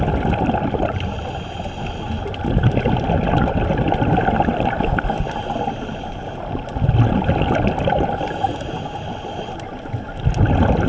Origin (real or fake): real